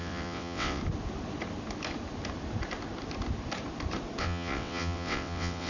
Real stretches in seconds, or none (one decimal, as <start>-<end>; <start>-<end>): 0.8-4.2